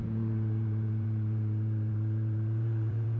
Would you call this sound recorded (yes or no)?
no